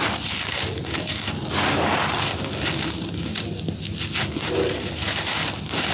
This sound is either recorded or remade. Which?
recorded